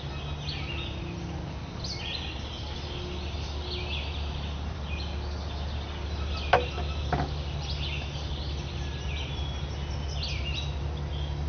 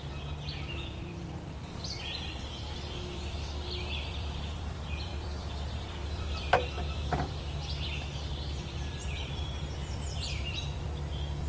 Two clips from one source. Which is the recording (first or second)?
first